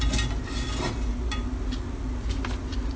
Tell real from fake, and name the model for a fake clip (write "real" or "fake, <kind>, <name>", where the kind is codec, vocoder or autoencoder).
real